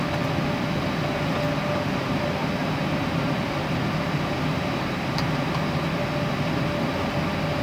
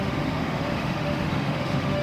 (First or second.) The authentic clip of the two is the first